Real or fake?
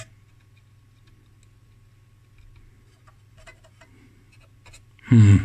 real